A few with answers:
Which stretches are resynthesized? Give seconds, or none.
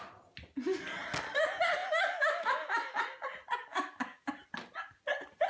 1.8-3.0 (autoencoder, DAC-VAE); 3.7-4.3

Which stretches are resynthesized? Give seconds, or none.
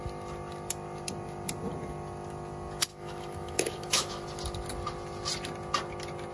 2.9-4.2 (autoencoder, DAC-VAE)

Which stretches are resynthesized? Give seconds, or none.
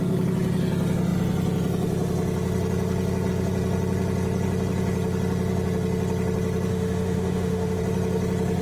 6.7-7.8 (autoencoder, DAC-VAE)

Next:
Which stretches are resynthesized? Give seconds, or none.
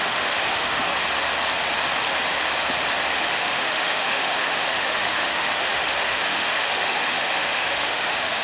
0.0-0.9 (autoencoder, DAC-VAE); 3.2-8.4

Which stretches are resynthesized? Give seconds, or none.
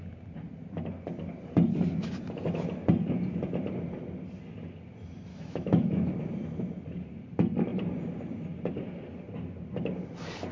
5.3-6.1 (autoencoder, DAC-VAE)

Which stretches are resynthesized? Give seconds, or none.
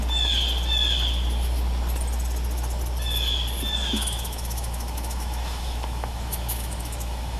3.8-7.4 (autoencoder, DAC-VAE)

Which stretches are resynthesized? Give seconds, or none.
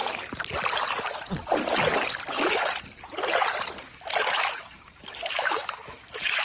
3.8-6.4 (autoencoder, DAC-VAE)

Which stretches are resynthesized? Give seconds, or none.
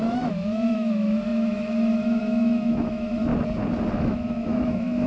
0.0-3.3 (autoencoder, DAC-VAE); 4.0-5.1